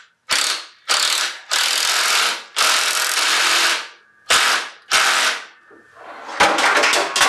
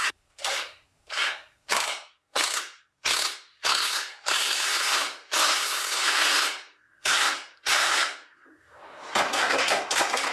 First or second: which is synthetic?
second